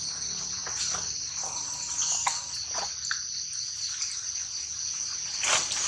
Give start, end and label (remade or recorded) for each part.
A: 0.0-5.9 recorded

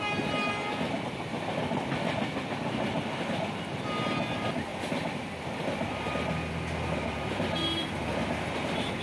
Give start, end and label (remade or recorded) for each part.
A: 0.0-9.0 recorded

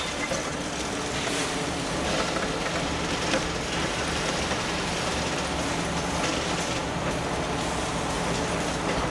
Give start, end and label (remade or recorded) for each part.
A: 0.0-9.1 recorded

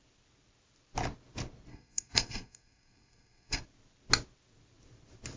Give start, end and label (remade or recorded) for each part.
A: 0.0-1.7 recorded; 1.7-3.6 remade; 3.6-5.4 recorded

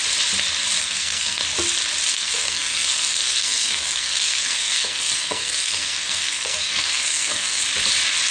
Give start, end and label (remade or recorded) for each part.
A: 0.0-0.8 recorded; 0.8-1.4 remade; 1.4-2.1 recorded; 2.1-7.6 remade; 7.6-8.3 recorded

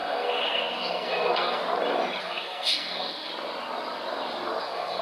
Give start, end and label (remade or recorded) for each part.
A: 0.0-1.6 remade; 1.6-2.2 recorded; 2.2-3.3 remade; 3.3-4.6 recorded; 4.6-5.0 remade